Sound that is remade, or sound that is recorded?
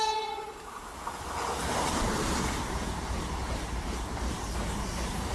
remade